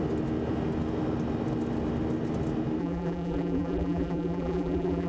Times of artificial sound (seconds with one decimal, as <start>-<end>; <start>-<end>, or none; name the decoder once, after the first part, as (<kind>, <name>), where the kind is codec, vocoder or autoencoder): 2.8-5.1 (vocoder, BigVGAN v2)